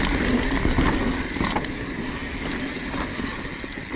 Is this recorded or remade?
recorded